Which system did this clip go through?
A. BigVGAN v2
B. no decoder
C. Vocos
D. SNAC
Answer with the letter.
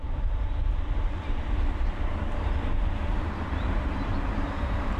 A